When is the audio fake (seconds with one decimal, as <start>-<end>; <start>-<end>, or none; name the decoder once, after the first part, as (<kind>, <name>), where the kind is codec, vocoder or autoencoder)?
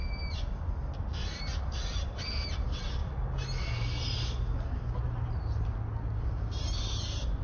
none